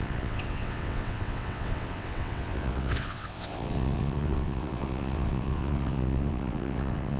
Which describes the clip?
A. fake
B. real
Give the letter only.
A